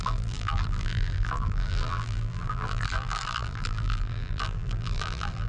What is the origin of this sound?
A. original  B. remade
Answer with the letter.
B